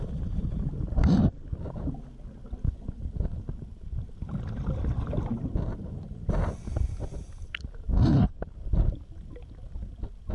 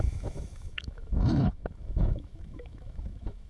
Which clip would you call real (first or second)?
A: first